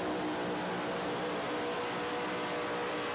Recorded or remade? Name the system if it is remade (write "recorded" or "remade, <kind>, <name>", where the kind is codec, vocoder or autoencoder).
recorded